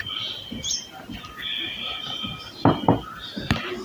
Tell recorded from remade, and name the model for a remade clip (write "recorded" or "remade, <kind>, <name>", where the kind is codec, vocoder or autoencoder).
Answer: recorded